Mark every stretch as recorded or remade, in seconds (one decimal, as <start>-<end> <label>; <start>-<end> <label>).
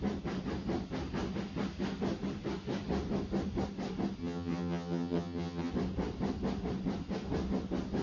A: 0.0-4.2 recorded; 4.2-5.7 remade; 5.7-8.0 recorded